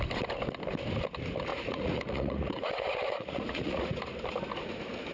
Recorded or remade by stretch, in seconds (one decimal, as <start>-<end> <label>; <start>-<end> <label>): 0.0-1.5 recorded; 1.5-4.0 remade; 4.0-5.1 recorded